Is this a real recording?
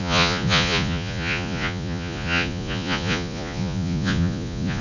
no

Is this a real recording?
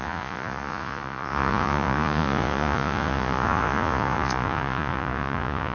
no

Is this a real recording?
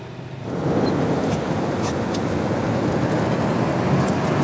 yes